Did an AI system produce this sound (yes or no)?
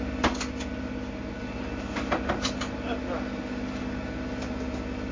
no